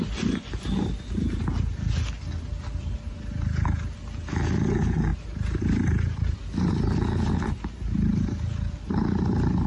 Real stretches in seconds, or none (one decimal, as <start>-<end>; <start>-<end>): 0.0-5.1; 6.7-9.7